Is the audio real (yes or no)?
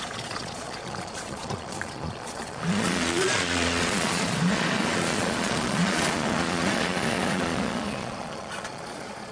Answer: no